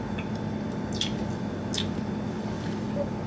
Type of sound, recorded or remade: recorded